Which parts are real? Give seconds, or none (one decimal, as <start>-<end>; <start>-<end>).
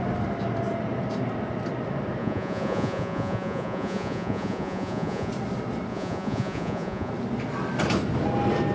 0.0-2.2; 5.3-5.9; 7.1-8.7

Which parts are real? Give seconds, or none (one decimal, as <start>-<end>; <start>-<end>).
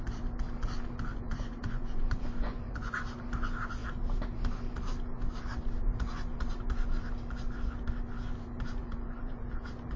0.0-1.1; 3.0-8.8; 9.4-10.0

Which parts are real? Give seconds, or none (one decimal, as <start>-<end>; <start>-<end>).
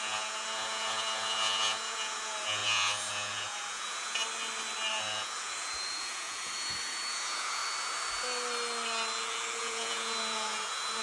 4.2-4.9; 7.6-9.6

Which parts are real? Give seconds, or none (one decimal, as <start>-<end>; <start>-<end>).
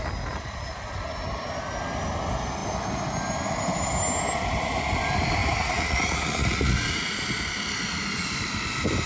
0.0-5.4; 7.2-9.1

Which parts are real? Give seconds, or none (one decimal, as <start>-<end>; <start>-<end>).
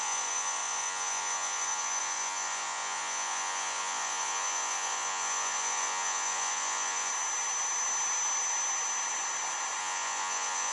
7.1-9.8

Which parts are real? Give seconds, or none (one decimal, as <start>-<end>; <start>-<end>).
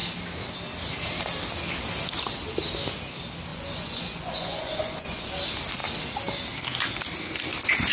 0.0-3.5; 5.3-7.9